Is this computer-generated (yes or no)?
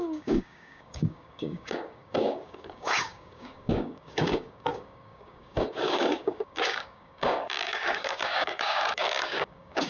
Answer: yes